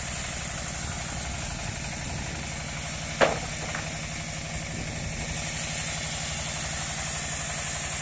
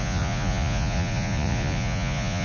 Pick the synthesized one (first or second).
second